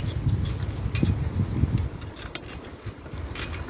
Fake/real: real